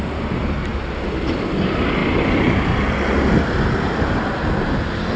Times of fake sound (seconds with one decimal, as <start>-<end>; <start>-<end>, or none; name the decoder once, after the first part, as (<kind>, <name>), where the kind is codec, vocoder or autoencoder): none